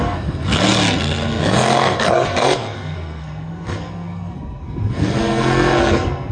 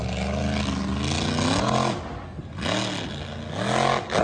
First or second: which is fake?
first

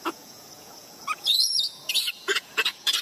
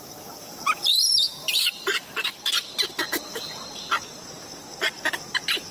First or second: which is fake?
first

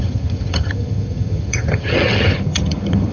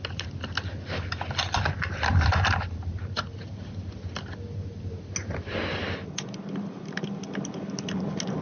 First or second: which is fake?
first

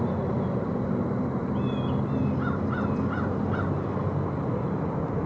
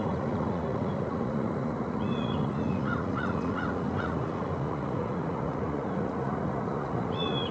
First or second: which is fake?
second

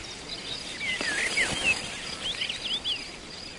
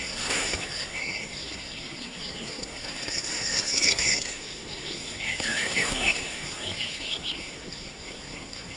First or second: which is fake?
second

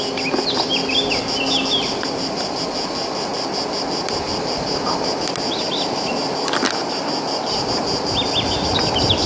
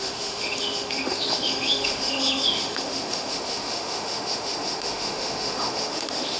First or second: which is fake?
second